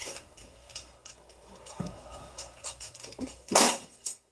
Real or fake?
fake